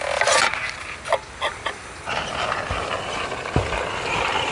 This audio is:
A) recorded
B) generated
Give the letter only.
A